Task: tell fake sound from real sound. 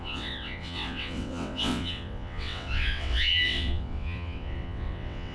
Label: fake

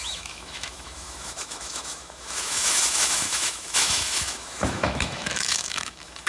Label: fake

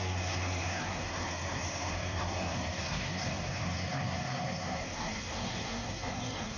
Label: fake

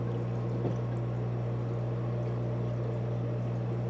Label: real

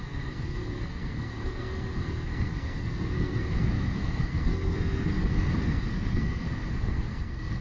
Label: fake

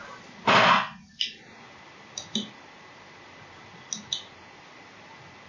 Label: real